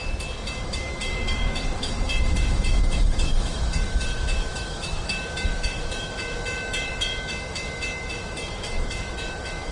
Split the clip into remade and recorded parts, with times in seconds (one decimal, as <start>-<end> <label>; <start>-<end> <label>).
0.0-0.6 recorded; 0.6-9.7 remade